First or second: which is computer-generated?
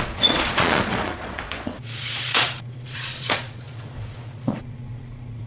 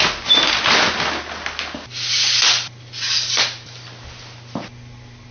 first